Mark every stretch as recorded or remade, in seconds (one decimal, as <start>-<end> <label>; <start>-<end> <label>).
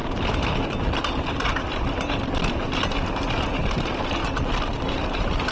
0.0-3.3 recorded; 3.3-4.2 remade; 4.2-4.8 recorded; 4.8-5.5 remade